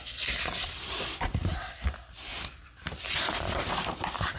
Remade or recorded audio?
remade